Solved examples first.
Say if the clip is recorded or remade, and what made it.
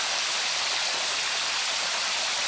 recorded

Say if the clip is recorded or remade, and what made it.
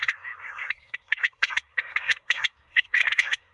remade, codec, SNAC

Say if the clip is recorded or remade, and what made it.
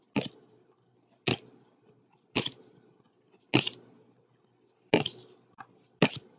recorded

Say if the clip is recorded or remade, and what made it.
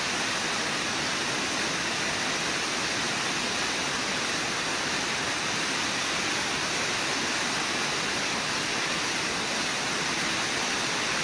recorded